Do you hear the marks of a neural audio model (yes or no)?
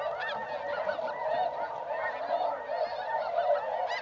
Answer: no